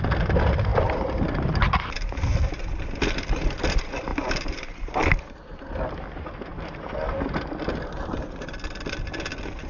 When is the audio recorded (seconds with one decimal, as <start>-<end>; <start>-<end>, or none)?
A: 0.0-9.7